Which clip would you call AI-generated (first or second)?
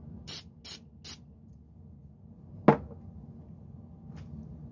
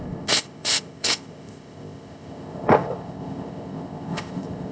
second